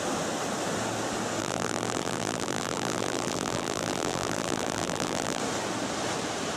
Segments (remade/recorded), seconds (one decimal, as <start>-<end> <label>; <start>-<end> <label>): 0.0-1.4 recorded; 1.4-5.4 remade; 5.4-6.6 recorded